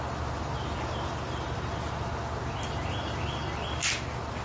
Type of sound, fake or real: real